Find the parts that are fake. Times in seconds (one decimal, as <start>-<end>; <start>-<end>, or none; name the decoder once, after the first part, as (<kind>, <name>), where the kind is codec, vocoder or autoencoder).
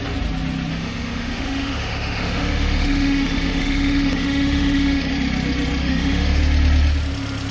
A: 0.7-5.1 (autoencoder, DAC-VAE); 5.8-6.4